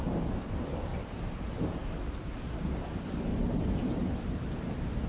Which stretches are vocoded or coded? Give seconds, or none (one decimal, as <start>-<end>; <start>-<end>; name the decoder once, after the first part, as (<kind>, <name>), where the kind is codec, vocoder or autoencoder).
0.9-2.0 (vocoder, BigVGAN v2); 3.3-4.4